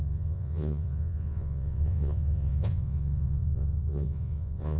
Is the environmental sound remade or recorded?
remade